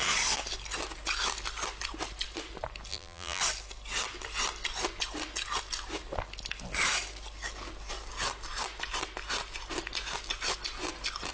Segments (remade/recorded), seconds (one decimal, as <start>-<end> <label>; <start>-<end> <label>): 0.0-2.9 recorded; 2.9-3.4 remade; 3.4-11.3 recorded